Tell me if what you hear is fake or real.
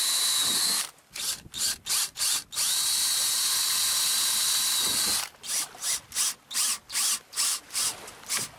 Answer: real